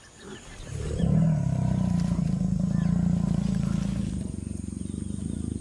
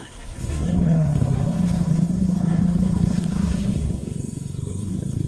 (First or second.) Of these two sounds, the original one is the first